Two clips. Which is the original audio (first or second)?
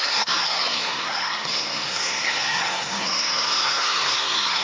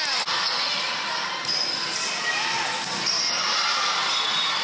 second